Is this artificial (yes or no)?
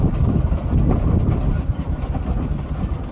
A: no